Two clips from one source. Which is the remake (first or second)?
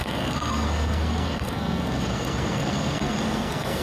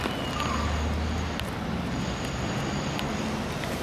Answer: first